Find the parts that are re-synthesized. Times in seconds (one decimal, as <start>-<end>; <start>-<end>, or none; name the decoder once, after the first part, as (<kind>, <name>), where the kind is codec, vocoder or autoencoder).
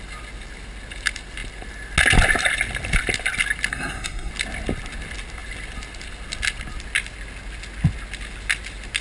3.7-4.3 (codec, SNAC)